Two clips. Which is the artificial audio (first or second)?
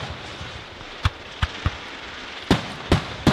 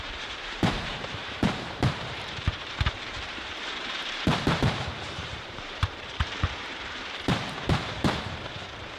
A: second